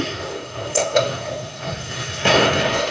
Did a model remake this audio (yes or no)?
yes